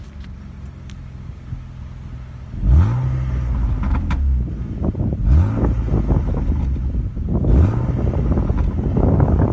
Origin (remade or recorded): recorded